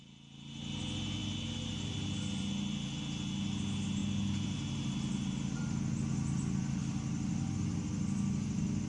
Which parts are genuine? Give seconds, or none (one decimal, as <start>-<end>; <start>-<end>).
0.0-1.2; 3.0-4.0; 5.6-8.9